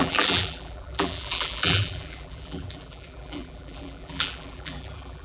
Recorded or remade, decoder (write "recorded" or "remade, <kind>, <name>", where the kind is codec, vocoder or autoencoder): remade, vocoder, BigVGAN v2